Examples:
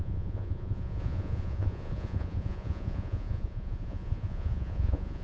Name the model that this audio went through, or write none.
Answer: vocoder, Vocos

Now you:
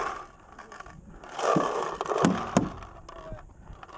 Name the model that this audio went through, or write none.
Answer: none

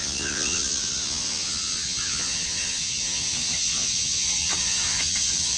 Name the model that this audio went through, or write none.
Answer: vocoder, Vocos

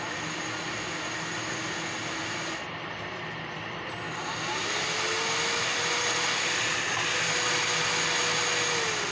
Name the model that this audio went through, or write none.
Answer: none